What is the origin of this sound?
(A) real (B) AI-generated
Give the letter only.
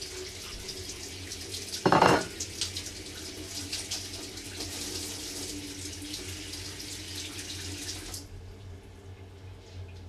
A